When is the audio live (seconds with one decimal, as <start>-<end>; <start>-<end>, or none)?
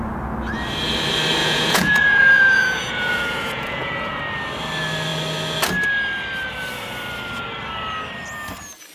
0.0-1.4; 4.2-8.9